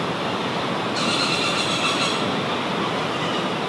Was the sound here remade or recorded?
recorded